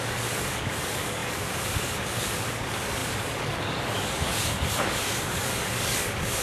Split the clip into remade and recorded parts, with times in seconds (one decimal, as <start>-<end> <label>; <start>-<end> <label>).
0.0-6.4 remade